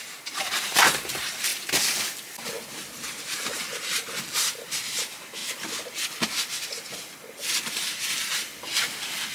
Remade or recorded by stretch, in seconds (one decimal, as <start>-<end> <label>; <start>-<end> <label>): 0.0-1.5 remade; 1.5-2.8 recorded; 2.8-5.4 remade; 5.4-7.7 recorded; 7.7-8.5 remade; 8.5-9.3 recorded